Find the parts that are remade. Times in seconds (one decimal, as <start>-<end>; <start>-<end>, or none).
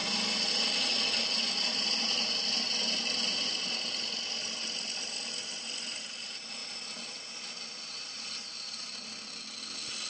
none